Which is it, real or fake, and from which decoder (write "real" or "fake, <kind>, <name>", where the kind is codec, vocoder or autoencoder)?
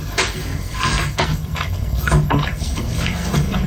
fake, codec, SNAC